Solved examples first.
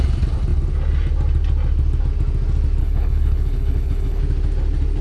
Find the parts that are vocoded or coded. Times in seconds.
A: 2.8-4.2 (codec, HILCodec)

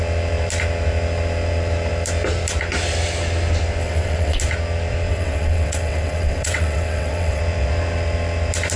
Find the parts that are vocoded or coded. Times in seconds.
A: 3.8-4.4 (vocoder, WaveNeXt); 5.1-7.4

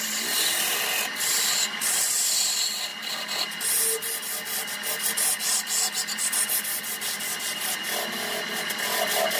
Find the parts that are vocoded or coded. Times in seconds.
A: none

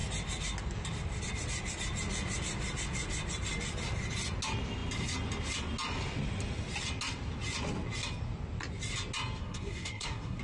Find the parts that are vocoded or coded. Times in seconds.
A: 9.4-10.4 (codec, SNAC)

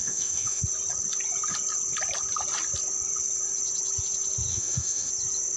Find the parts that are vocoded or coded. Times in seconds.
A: 0.0-0.6 (autoencoder, DAC-VAE); 4.5-5.1

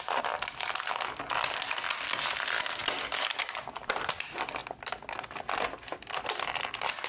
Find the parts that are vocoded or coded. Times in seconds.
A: none